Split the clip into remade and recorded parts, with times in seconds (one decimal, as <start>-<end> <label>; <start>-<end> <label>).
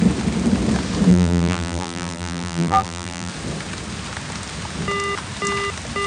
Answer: 0.0-1.1 recorded; 1.1-3.3 remade; 3.3-6.1 recorded